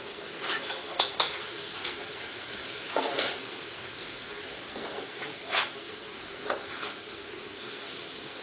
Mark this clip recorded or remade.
remade